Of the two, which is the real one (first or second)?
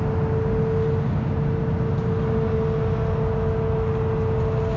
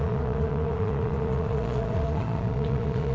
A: first